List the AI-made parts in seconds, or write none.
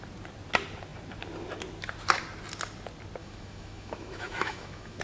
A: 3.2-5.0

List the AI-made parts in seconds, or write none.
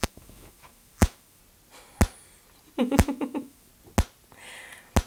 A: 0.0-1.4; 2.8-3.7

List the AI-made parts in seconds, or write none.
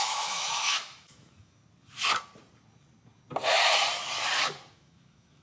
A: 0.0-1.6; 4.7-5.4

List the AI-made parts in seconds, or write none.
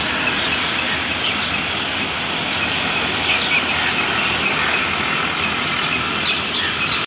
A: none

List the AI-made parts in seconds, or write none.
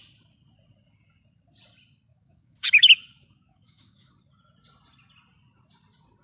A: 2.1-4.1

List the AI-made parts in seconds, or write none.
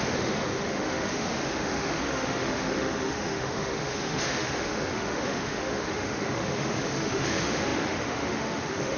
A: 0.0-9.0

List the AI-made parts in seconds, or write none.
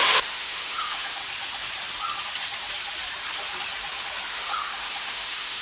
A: 0.0-1.2; 4.3-5.6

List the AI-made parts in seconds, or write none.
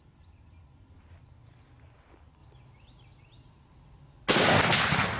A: none